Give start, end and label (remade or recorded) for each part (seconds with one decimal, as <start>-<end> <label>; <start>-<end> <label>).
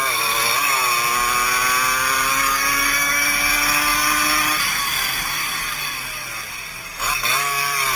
0.0-0.8 remade; 0.8-2.3 recorded; 2.3-8.0 remade